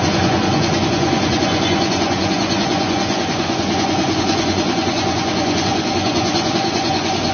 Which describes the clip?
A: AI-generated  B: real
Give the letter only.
A